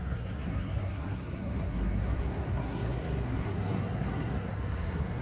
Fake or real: fake